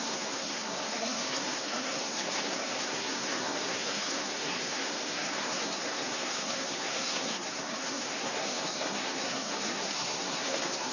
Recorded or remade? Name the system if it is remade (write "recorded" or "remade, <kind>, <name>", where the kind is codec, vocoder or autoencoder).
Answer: remade, codec, SNAC